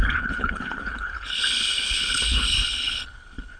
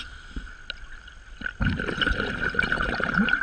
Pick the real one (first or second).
second